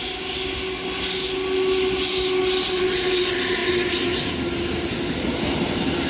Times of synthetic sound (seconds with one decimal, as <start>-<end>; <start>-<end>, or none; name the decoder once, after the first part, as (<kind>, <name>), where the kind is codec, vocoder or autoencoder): none